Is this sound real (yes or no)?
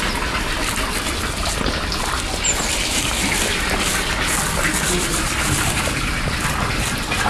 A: yes